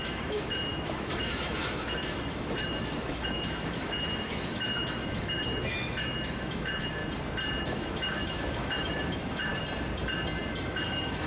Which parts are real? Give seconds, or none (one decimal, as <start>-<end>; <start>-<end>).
7.0-7.6; 9.5-10.5